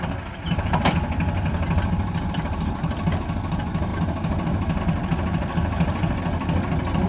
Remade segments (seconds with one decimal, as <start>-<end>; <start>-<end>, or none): none